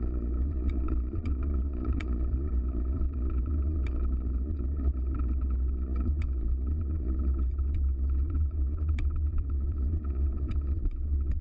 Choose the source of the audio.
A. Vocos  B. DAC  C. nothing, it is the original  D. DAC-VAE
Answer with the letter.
A